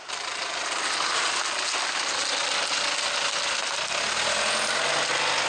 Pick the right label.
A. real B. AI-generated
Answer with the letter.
A